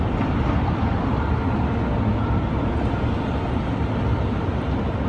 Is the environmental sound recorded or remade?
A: recorded